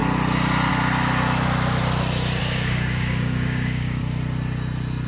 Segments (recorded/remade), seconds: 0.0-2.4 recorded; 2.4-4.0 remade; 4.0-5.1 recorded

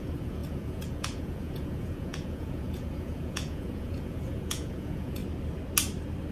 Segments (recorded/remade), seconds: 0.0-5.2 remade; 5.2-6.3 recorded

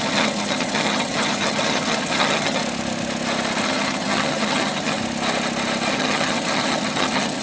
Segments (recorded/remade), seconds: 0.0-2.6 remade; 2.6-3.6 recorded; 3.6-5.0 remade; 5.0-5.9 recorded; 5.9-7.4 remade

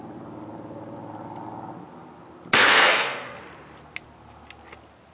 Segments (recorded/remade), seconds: 0.0-2.6 recorded; 2.6-3.4 remade; 3.4-5.1 recorded

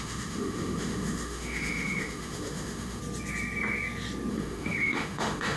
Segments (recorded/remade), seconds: 0.0-3.0 remade; 3.0-4.3 recorded; 4.3-5.6 remade

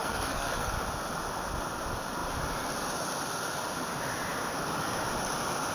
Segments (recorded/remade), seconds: 0.0-0.7 remade; 0.7-5.7 recorded